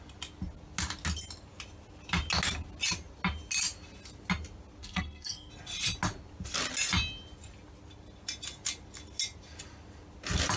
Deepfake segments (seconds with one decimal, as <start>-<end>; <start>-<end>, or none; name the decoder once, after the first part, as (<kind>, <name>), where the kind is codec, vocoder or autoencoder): 4.8-5.5 (codec, SNAC)